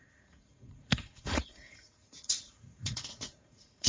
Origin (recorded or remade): remade